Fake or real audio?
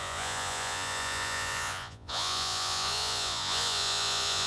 fake